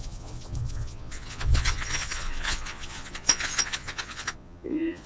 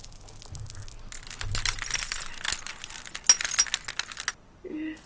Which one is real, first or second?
second